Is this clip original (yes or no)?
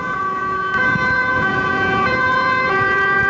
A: no